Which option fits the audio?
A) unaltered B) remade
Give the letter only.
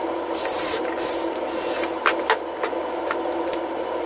A